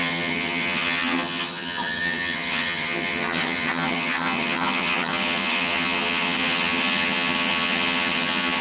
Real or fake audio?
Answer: fake